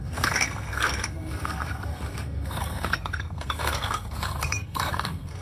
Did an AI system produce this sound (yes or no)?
yes